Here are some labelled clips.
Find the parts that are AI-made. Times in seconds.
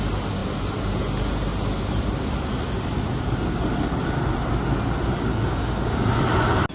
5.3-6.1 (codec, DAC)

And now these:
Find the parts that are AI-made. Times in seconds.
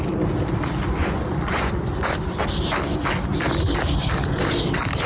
1.0-1.7 (vocoder, Vocos)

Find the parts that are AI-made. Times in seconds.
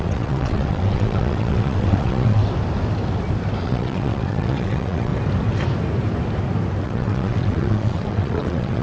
0.0-2.4 (vocoder, WaveNeXt); 3.6-5.1; 6.8-8.8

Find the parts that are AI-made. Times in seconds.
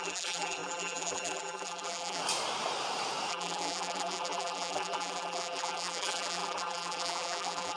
0.0-2.2 (vocoder, BigVGAN v2); 3.3-7.8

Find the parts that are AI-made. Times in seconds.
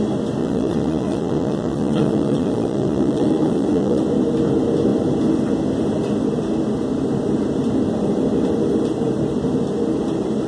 0.4-4.0 (vocoder, Vocos)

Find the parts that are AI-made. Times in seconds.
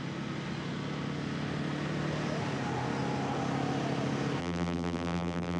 4.4-5.6 (vocoder, BigVGAN v2)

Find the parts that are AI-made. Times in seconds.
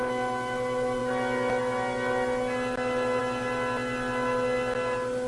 none